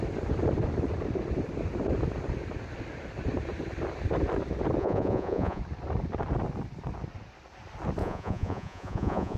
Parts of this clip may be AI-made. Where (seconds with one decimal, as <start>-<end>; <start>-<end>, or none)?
4.8-5.6; 8.0-9.4